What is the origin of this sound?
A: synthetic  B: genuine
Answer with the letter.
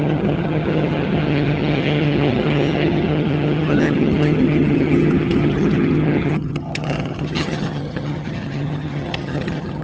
A